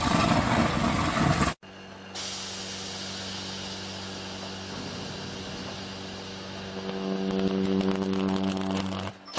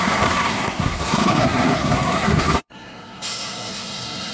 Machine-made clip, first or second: second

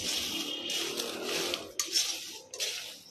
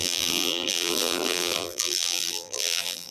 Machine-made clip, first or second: second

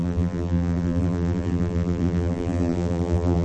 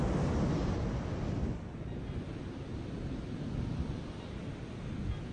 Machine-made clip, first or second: first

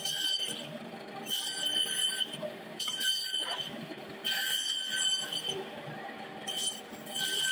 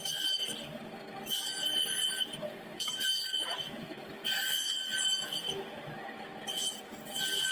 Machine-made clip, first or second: first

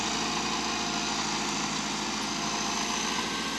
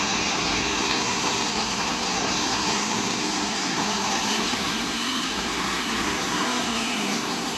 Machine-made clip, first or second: second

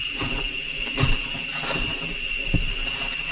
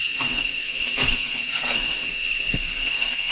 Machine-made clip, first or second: second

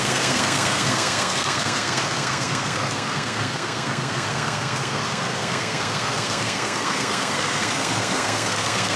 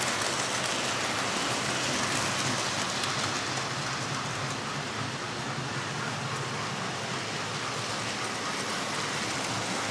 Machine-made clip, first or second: first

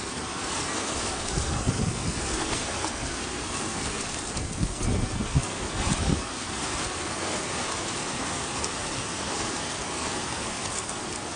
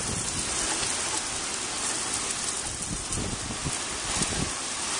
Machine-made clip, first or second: first